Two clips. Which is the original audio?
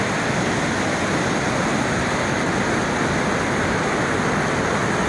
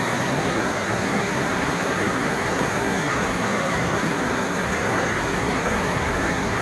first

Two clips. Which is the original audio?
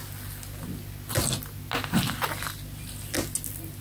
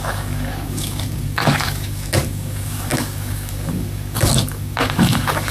first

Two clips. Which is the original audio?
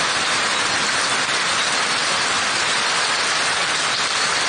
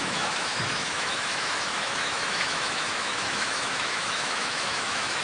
first